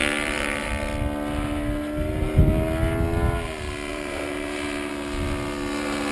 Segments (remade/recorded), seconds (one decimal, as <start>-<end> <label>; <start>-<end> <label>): 0.0-0.7 remade; 0.7-3.9 recorded; 3.9-4.9 remade; 4.9-6.1 recorded